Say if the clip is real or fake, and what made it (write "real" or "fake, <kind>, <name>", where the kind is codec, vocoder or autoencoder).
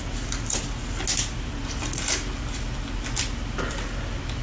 real